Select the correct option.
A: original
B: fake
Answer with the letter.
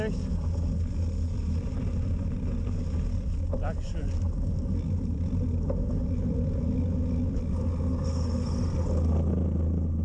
A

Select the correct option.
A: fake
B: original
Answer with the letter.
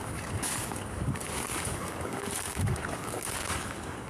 A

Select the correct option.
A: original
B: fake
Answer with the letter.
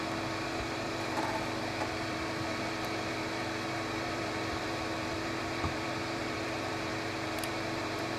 B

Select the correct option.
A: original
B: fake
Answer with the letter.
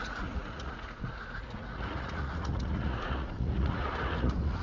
B